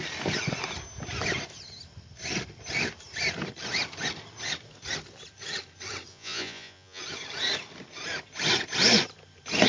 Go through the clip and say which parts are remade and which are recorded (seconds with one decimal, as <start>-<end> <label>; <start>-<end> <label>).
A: 0.0-6.1 recorded; 6.1-7.0 remade; 7.0-9.7 recorded